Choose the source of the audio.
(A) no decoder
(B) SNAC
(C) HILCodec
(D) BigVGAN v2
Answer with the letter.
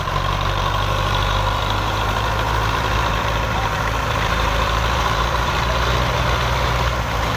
D